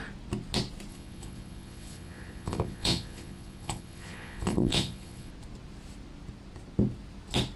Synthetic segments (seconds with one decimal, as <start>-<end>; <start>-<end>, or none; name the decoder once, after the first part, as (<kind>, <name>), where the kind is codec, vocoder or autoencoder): 0.9-5.3 (vocoder, Vocos)